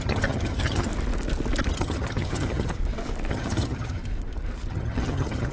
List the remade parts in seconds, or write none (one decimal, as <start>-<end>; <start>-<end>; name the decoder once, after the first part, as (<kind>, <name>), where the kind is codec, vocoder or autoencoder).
0.0-0.9 (vocoder, HiFi-GAN); 1.7-2.8; 3.3-4.0; 4.7-5.5